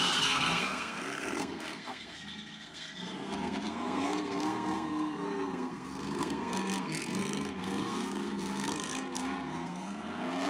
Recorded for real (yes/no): no